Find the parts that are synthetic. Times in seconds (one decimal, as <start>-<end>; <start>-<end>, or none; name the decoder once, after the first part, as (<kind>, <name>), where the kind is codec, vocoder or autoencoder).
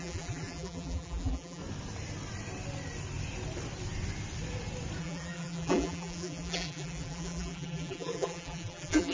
0.0-1.6 (vocoder, BigVGAN v2); 5.0-9.1